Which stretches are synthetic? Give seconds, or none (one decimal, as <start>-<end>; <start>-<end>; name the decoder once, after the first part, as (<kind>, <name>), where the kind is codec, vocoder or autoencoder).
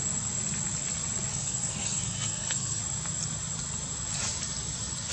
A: 1.3-2.8 (codec, SNAC)